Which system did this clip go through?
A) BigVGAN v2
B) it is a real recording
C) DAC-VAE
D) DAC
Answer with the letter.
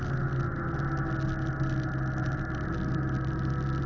B